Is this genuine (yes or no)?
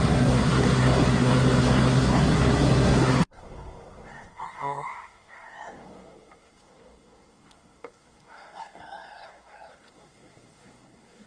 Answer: no